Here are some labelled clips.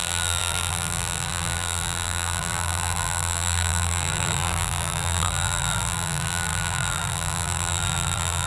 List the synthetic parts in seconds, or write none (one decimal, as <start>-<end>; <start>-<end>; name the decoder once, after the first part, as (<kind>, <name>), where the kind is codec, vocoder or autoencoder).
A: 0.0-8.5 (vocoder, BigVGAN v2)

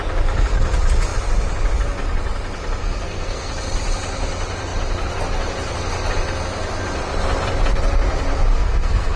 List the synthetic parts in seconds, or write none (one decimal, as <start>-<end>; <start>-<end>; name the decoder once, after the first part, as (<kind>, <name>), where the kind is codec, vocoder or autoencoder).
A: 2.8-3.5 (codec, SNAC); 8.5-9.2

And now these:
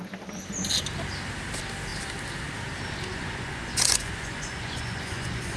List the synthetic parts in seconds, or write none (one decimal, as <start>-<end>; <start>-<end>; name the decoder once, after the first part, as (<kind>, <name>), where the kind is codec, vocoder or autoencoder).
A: 3.1-5.6 (vocoder, Vocos)